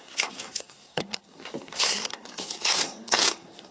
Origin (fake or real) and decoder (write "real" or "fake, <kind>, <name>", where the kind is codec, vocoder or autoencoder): fake, codec, SNAC